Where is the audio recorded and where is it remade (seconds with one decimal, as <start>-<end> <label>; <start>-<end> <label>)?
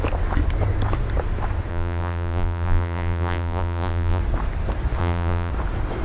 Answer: 0.0-1.7 recorded; 1.7-4.2 remade; 4.2-5.0 recorded; 5.0-5.5 remade; 5.5-6.0 recorded